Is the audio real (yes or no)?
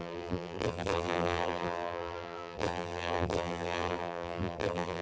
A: no